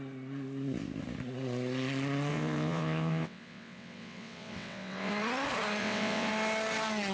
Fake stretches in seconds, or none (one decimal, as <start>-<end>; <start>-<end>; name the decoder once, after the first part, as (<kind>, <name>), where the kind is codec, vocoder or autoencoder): 2.3-5.1 (vocoder, WaveNeXt); 5.8-6.3